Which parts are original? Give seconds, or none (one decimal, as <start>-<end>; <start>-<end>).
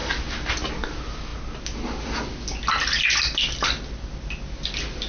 0.0-5.1